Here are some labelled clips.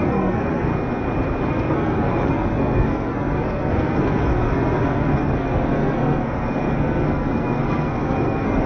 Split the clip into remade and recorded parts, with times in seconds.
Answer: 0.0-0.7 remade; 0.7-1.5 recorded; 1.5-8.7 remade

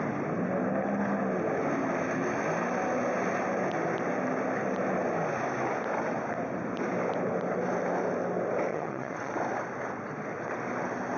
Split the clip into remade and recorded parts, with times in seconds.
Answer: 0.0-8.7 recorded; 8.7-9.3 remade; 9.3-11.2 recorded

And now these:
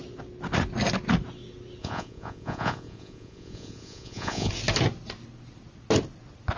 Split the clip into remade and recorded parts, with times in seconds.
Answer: 0.0-1.8 recorded; 1.8-4.5 remade; 4.5-6.6 recorded

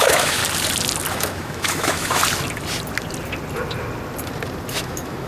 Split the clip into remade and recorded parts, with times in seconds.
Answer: 0.0-0.4 remade; 0.4-1.1 recorded; 1.1-2.2 remade; 2.2-4.7 recorded; 4.7-5.3 remade

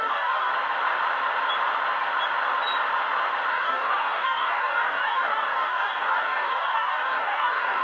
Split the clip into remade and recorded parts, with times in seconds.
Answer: 0.0-0.5 remade; 0.5-3.5 recorded; 3.5-7.8 remade

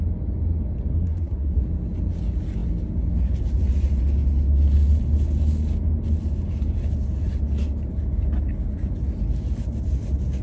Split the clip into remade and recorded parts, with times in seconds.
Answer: 0.0-0.9 recorded; 0.9-1.6 remade; 1.6-10.4 recorded

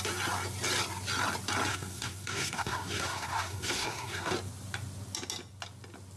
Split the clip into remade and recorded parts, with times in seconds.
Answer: 0.0-1.7 recorded; 1.7-4.3 remade; 4.3-6.2 recorded